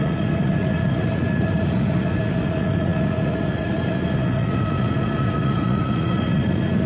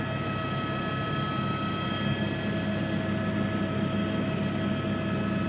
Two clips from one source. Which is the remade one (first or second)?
first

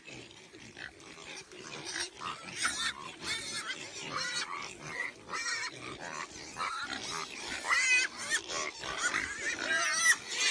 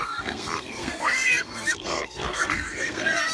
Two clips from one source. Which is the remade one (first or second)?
second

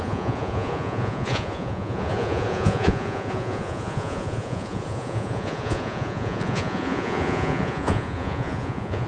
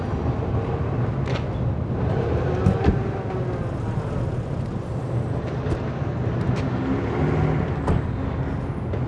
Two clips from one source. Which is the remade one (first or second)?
first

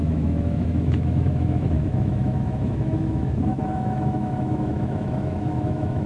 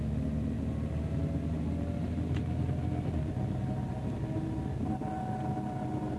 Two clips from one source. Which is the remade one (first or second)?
first